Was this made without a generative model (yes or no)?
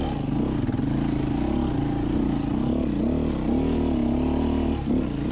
yes